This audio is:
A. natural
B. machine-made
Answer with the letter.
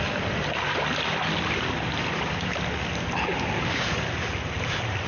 A